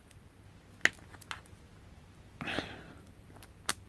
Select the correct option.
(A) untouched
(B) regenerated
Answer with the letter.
A